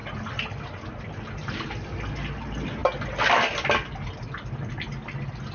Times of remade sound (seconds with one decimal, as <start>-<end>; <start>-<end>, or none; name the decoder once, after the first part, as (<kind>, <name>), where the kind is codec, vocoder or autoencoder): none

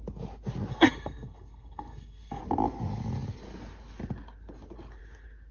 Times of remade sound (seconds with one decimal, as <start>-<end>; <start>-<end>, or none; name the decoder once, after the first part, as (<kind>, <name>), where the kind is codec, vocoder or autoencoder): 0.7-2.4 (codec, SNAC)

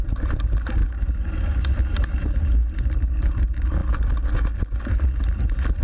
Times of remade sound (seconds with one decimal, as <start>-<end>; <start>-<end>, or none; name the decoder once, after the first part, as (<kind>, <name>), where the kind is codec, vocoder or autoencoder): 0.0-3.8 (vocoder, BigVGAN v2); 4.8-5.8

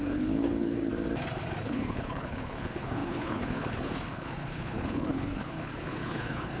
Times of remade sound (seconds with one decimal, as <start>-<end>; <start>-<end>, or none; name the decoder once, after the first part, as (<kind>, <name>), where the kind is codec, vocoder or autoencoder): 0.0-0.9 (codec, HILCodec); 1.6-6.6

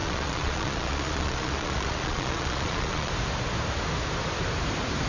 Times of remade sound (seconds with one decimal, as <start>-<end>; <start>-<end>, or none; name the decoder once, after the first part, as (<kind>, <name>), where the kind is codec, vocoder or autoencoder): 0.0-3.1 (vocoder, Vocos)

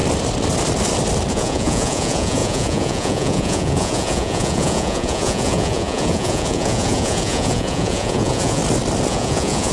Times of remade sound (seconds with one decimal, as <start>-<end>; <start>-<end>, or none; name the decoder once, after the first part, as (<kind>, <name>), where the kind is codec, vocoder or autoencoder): 1.3-8.6 (vocoder, Vocos); 9.1-9.7